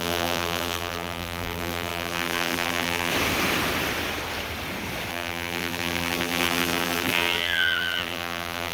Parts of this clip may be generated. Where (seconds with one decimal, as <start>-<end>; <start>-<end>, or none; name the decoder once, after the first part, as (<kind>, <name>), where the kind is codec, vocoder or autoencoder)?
0.0-3.1 (vocoder, BigVGAN v2); 5.1-8.7